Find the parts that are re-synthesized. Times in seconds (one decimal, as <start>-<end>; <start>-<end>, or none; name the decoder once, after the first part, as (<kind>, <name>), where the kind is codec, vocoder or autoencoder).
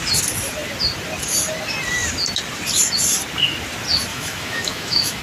4.1-5.2 (autoencoder, DAC-VAE)